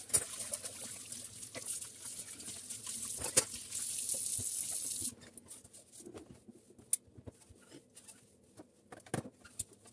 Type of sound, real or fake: real